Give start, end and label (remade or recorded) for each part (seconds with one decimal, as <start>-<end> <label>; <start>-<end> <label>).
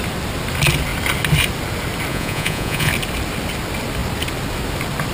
0.0-2.1 recorded; 2.1-2.9 remade; 2.9-5.1 recorded